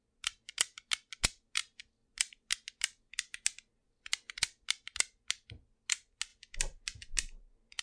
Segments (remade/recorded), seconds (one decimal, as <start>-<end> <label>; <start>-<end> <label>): 0.0-7.8 recorded